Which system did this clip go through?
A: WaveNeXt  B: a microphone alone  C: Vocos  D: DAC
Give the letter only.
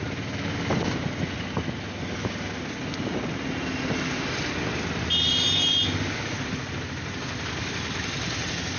B